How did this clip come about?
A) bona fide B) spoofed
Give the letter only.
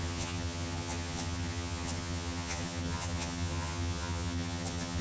B